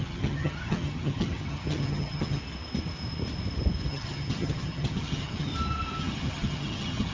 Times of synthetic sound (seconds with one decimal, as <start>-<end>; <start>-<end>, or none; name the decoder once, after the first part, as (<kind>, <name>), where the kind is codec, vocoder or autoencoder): 0.0-2.4 (vocoder, HiFi-GAN); 3.9-5.5; 6.0-7.1